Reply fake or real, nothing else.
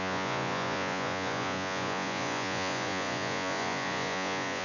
fake